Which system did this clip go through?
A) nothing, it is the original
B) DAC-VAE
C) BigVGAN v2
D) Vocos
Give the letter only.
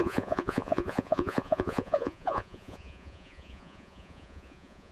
D